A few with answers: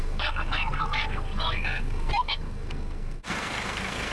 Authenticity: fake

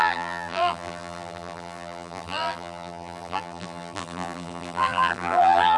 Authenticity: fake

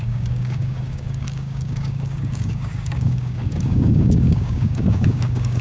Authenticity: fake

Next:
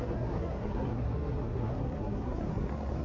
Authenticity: fake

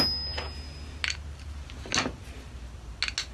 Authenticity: real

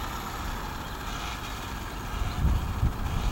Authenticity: real